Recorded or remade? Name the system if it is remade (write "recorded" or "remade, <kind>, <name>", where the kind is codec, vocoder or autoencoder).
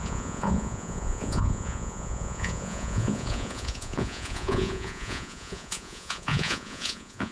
remade, vocoder, Vocos